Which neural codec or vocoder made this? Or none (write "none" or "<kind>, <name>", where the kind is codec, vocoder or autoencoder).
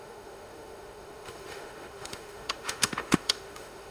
autoencoder, DAC-VAE